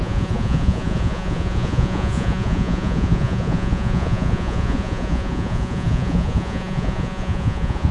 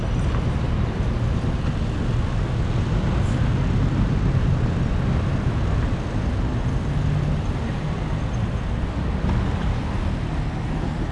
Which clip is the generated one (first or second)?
first